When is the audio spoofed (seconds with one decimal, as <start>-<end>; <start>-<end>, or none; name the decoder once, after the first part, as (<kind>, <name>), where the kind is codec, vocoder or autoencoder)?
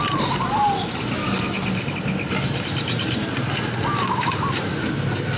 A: none